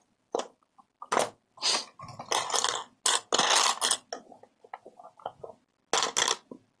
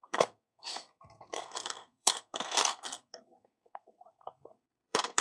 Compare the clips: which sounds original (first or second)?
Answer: first